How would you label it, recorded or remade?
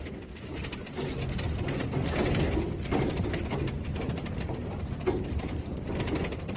recorded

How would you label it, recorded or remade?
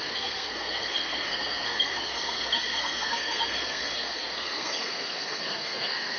remade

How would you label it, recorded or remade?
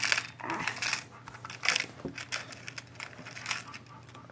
recorded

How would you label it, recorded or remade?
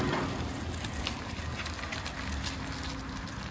recorded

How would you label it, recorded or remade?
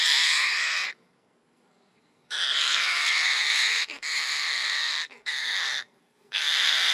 remade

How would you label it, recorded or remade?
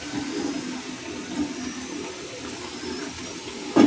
recorded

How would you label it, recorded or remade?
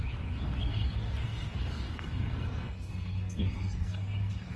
remade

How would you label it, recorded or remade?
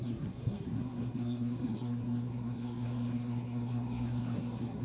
remade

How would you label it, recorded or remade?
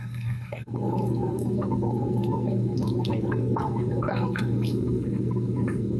remade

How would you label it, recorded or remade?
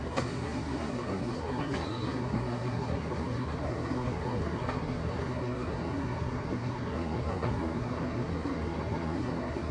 remade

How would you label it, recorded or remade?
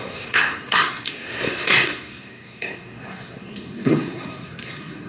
remade